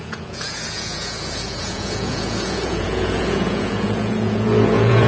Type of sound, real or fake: fake